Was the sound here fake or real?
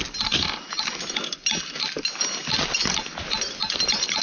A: real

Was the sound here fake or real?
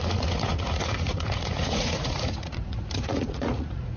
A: fake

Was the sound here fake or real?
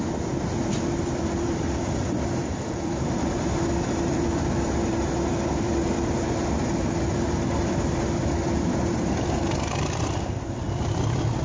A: fake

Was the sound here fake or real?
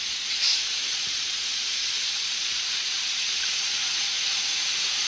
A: fake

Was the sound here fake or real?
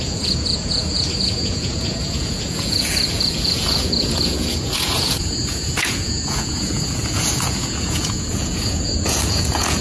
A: fake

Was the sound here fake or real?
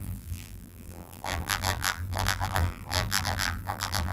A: fake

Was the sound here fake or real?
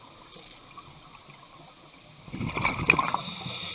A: real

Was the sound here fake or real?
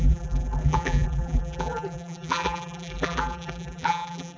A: fake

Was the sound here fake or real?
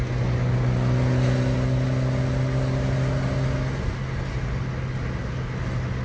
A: real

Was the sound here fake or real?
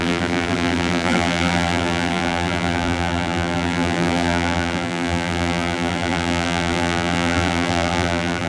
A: fake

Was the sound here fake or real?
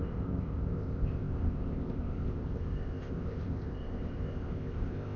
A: fake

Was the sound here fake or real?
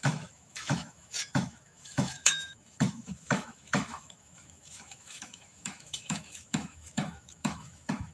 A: fake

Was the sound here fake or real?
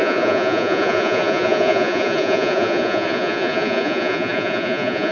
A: fake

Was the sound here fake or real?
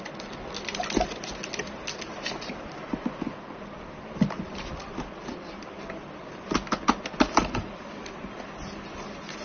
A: real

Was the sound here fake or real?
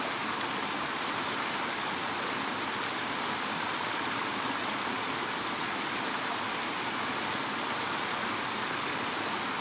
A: real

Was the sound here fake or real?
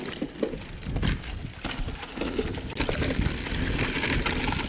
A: real